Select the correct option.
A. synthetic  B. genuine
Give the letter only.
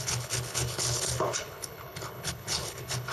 A